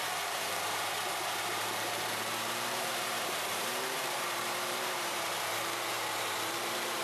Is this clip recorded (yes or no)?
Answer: no